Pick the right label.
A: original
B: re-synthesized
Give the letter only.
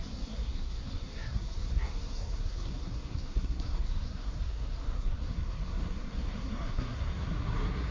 B